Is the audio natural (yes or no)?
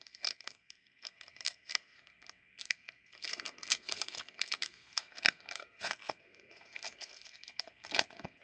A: no